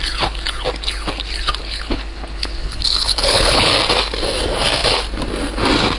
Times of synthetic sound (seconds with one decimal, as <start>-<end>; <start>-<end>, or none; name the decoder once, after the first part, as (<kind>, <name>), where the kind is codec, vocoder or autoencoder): 1.6-3.7 (codec, HILCodec)